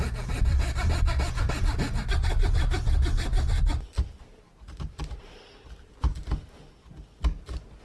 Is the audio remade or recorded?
recorded